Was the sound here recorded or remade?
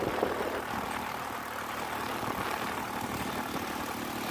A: recorded